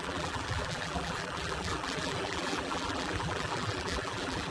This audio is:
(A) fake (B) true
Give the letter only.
A